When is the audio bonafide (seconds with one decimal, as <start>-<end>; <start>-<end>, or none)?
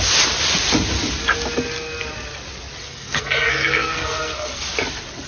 0.0-2.9; 4.6-5.3